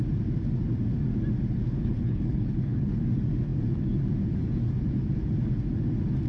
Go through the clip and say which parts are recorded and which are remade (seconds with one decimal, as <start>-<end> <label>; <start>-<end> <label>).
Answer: 0.0-1.8 recorded; 1.8-3.0 remade; 3.0-6.3 recorded